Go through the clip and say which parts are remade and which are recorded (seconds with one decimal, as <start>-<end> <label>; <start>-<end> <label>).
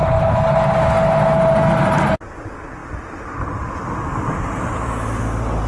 0.0-5.7 recorded